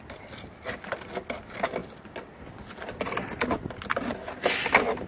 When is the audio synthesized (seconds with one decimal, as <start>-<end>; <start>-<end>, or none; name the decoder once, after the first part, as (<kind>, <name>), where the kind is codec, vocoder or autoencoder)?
1.8-4.5 (vocoder, BigVGAN v2)